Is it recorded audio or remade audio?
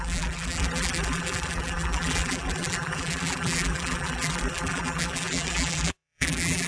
remade